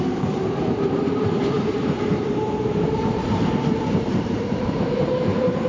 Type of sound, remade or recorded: remade